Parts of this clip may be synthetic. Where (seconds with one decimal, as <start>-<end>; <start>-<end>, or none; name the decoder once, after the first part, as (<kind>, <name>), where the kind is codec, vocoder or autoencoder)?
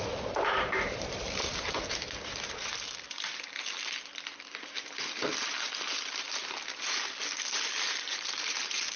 0.0-2.7 (vocoder, BigVGAN v2); 7.5-9.0